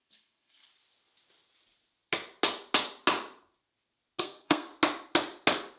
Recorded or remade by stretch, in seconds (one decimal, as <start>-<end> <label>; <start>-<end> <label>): 0.0-0.7 remade; 0.7-4.2 recorded; 4.2-4.7 remade; 4.7-5.8 recorded